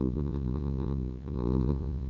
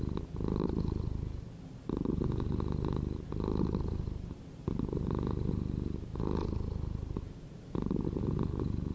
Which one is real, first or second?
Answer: second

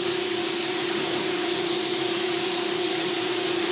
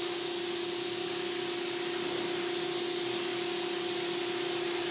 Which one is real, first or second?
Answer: second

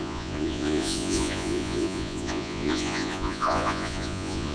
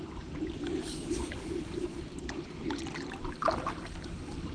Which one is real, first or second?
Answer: second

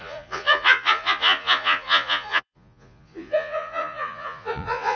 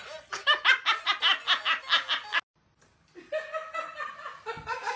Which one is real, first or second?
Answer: second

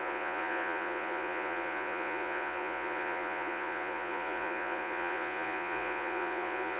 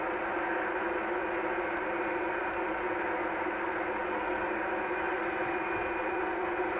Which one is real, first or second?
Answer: second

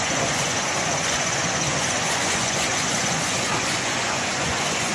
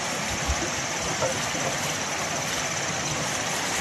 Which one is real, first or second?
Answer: second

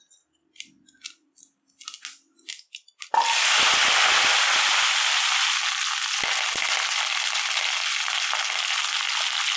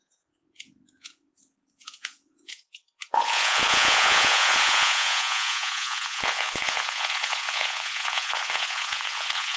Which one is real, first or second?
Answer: first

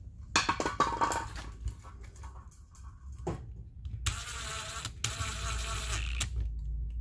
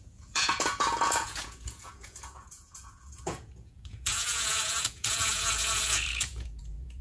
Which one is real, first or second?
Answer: first